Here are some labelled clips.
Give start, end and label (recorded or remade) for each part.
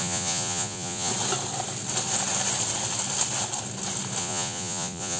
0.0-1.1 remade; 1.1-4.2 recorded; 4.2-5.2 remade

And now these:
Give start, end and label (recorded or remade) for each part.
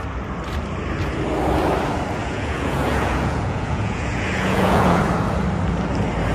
0.0-2.2 recorded; 2.2-5.0 remade; 5.0-6.3 recorded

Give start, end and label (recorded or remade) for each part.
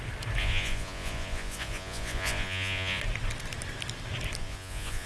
0.0-0.4 recorded; 0.4-3.0 remade; 3.0-4.4 recorded; 4.4-5.1 remade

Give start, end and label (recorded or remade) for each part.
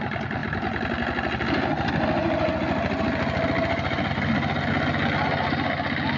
0.0-6.2 recorded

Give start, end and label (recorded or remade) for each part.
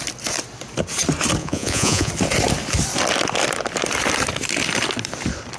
0.0-1.4 recorded; 1.4-2.1 remade; 2.1-5.6 recorded